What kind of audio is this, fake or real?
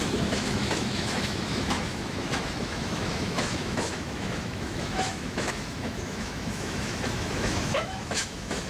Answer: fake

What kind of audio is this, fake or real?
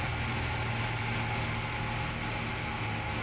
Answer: real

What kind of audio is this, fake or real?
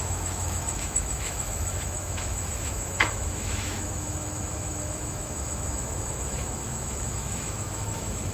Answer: fake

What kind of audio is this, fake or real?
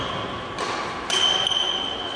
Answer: real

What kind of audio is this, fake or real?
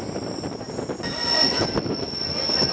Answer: real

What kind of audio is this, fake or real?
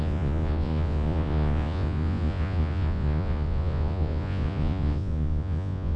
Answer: fake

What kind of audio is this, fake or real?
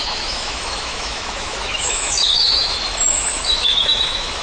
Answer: fake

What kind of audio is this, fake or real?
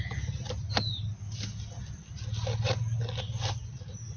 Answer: real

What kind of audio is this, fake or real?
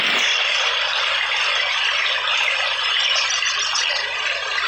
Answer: real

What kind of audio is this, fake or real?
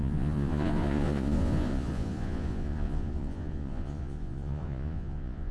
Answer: fake